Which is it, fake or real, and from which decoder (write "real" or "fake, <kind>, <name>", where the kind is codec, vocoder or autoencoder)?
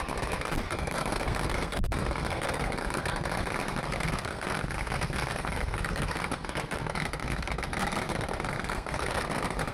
fake, codec, SNAC